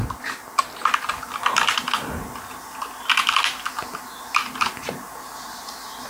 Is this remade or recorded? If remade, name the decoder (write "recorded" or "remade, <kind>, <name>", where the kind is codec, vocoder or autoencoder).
recorded